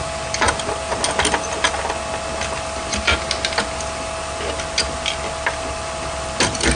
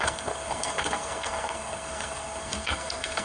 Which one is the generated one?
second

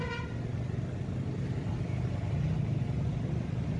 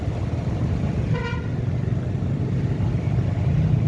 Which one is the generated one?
second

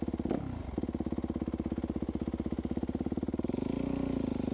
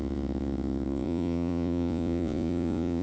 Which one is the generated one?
second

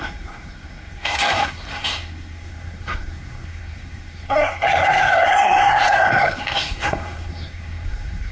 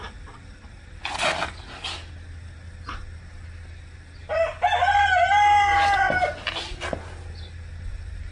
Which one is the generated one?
first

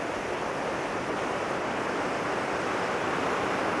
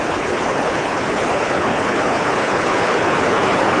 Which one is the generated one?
second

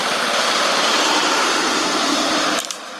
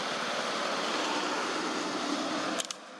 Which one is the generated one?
first